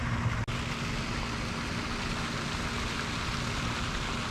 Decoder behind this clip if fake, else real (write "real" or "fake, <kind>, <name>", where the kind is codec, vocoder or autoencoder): real